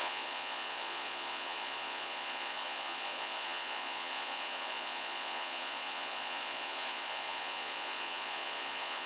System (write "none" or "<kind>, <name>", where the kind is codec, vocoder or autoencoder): vocoder, Vocos